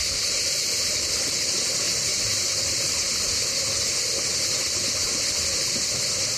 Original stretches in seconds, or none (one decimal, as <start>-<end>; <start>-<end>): 1.2-6.4

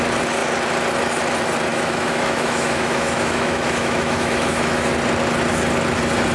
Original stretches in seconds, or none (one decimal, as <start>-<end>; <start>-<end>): 0.0-1.7; 4.9-6.3

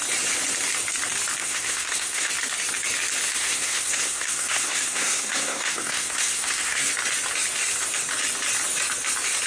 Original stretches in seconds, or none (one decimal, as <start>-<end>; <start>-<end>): 0.0-1.4; 2.3-3.3; 6.9-9.5

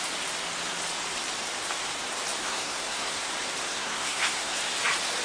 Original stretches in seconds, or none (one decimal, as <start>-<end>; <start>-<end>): 0.0-2.4; 3.3-3.7; 4.6-5.2